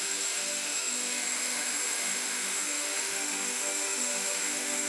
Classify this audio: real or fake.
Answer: fake